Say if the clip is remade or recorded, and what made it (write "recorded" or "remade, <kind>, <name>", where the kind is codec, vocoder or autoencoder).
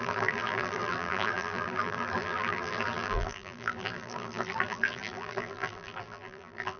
remade, vocoder, BigVGAN v2